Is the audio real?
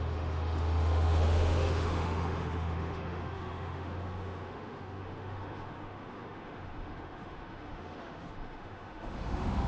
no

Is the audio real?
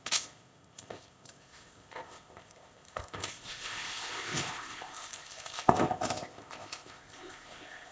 no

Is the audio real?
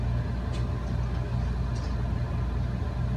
yes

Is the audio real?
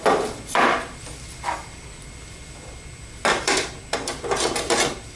no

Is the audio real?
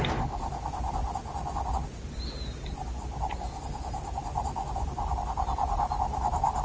yes